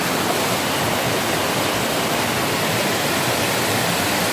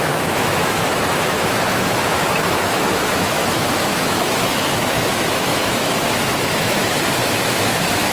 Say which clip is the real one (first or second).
first